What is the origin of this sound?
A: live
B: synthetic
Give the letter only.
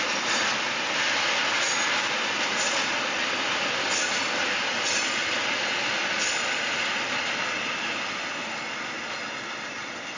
A